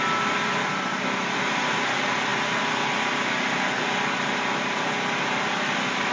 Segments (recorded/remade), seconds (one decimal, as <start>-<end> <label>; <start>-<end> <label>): 0.0-6.1 recorded